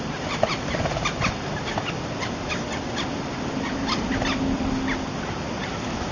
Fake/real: real